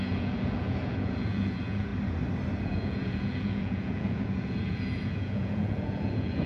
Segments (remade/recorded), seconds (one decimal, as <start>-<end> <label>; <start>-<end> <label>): 0.0-1.9 remade; 1.9-2.6 recorded; 2.6-6.5 remade